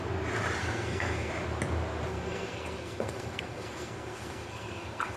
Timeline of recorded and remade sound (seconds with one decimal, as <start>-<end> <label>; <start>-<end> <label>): 0.0-0.6 recorded; 0.6-1.3 remade; 1.3-2.1 recorded; 2.1-5.2 remade

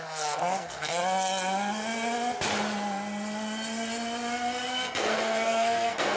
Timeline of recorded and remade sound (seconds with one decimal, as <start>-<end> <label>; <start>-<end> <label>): 0.0-1.0 remade; 1.0-4.7 recorded; 4.7-6.2 remade

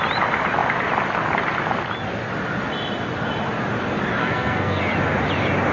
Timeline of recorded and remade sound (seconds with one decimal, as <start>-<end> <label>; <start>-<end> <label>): 0.0-4.2 recorded; 4.2-4.8 remade; 4.8-5.7 recorded

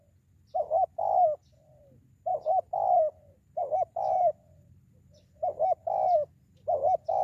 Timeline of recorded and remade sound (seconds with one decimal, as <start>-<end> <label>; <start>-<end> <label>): 0.0-7.2 recorded

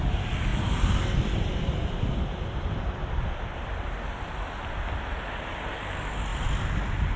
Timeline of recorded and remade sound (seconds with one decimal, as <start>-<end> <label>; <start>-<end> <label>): 0.0-7.2 recorded

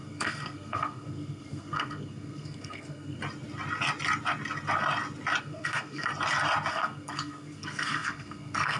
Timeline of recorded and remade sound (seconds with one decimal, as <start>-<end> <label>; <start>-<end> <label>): 0.0-3.2 remade; 3.2-5.4 recorded; 5.4-6.1 remade; 6.1-6.7 recorded; 6.7-8.8 remade

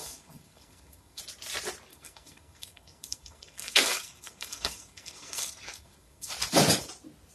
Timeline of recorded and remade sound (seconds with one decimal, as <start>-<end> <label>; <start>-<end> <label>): 0.0-1.2 remade; 1.2-1.9 recorded; 1.9-6.3 remade; 6.3-7.3 recorded